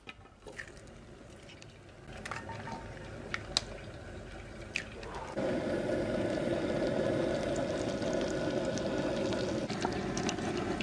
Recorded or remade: recorded